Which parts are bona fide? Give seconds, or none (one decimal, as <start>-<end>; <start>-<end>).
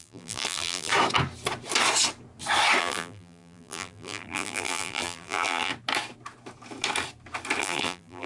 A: 0.9-2.8; 5.7-7.6